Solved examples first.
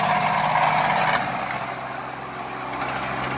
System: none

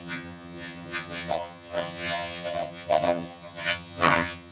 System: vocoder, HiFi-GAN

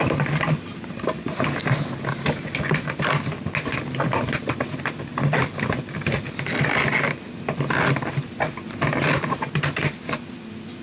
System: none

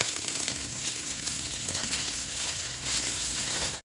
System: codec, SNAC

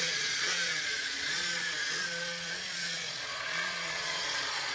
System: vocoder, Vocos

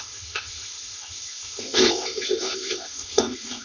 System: codec, ZipCodec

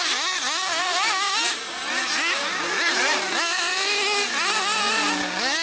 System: none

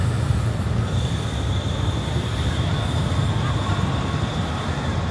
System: vocoder, BigVGAN v2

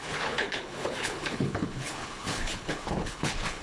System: codec, HILCodec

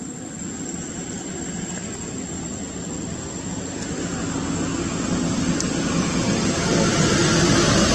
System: none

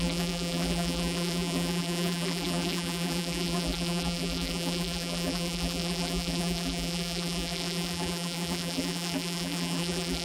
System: vocoder, BigVGAN v2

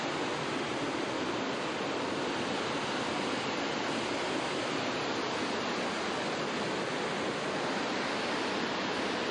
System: none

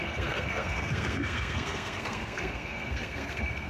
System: codec, SNAC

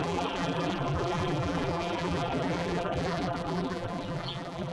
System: vocoder, BigVGAN v2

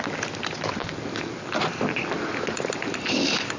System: none